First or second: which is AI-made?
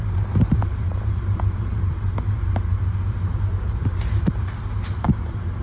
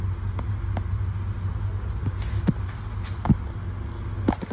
first